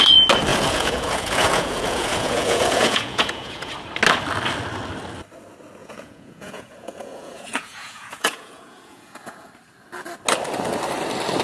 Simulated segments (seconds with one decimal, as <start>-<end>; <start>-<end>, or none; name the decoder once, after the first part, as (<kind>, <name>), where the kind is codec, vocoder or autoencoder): 0.5-3.7 (vocoder, Vocos); 5.8-9.5